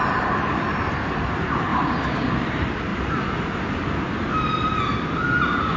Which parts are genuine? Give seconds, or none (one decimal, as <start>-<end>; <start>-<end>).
0.0-1.7; 2.3-5.8